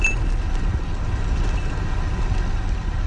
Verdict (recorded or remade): recorded